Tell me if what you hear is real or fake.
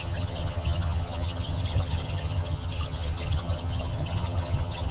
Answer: fake